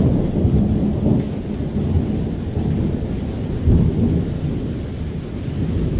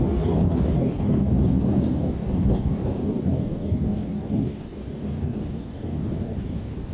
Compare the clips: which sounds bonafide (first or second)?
first